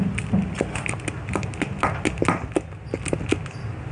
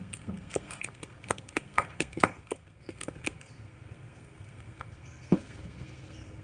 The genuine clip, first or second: first